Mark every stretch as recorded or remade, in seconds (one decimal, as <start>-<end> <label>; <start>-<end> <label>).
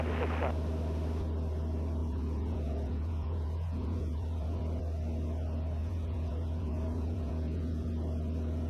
0.0-2.0 recorded; 2.0-4.8 remade; 4.8-5.8 recorded; 5.8-7.9 remade; 7.9-8.7 recorded